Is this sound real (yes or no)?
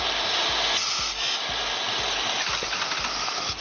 yes